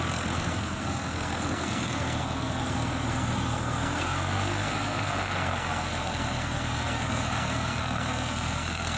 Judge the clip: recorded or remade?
remade